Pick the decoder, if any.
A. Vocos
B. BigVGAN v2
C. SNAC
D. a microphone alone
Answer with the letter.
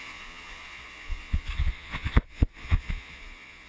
A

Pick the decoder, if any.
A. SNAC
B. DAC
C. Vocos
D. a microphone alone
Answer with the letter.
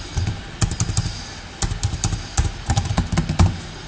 D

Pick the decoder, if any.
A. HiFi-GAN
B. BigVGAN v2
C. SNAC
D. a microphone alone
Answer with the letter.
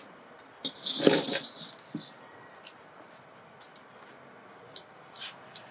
D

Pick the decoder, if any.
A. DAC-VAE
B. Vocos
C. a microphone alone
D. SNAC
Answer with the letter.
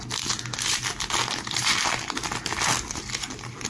C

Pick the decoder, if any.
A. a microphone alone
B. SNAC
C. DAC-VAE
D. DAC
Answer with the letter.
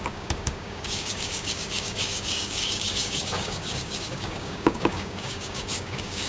D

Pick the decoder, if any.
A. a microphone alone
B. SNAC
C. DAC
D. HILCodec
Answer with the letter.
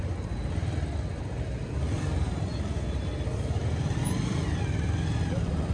A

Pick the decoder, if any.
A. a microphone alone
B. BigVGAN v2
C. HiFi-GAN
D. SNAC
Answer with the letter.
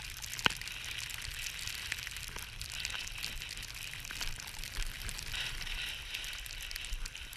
A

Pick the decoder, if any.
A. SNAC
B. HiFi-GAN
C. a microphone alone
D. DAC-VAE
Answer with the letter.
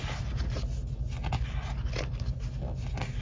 C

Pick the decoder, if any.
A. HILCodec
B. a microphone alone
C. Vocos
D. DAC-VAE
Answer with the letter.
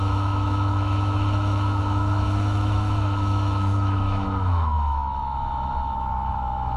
D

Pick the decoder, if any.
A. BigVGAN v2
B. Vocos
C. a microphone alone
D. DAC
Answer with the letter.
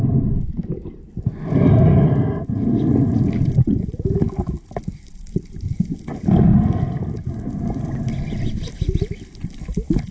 C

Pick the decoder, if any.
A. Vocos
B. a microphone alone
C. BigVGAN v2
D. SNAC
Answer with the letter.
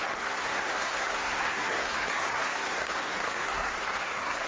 D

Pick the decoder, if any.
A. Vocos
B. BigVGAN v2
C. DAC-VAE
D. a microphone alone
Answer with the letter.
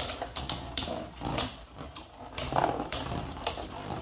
B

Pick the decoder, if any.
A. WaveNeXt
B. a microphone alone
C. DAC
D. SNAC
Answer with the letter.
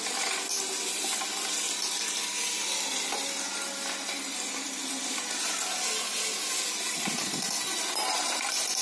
B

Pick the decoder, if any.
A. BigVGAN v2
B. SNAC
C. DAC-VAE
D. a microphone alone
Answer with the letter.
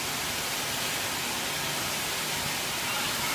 D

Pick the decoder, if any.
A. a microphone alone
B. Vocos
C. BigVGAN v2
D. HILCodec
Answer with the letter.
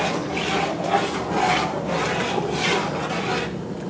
A